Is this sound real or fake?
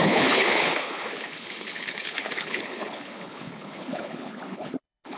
fake